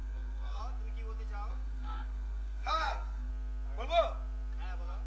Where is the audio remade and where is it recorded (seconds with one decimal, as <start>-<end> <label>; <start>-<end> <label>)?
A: 0.0-0.6 remade; 0.6-1.5 recorded; 1.5-3.3 remade; 3.3-5.1 recorded